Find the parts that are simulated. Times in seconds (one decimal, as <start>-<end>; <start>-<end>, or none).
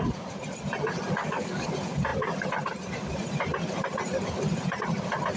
1.2-1.7